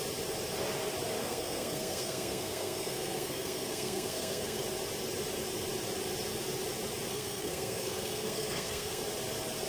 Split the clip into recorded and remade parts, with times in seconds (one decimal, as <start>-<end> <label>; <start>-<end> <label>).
0.0-1.2 recorded; 1.2-4.6 remade; 4.6-7.1 recorded; 7.1-9.0 remade; 9.0-9.7 recorded